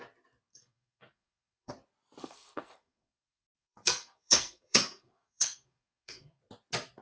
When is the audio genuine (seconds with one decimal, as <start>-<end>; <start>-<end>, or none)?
0.0-0.5; 1.7-2.2; 6.4-7.0